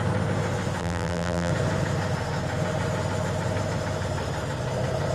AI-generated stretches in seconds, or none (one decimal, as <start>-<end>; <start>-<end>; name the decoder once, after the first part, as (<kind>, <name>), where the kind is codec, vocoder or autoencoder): 0.8-1.5 (vocoder, BigVGAN v2)